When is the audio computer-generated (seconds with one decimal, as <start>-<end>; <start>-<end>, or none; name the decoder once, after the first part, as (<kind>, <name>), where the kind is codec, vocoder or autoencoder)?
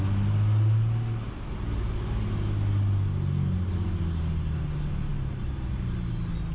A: 5.1-6.1 (vocoder, BigVGAN v2)